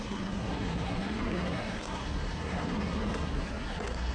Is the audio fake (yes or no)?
yes